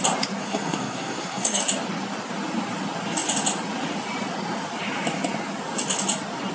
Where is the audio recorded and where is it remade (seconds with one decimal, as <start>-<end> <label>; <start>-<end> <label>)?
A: 0.0-0.4 recorded; 0.4-1.6 remade; 1.6-6.5 recorded